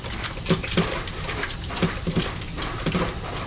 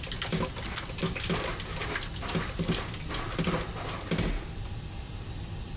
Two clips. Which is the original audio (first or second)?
second